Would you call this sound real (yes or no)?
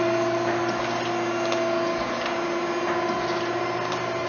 yes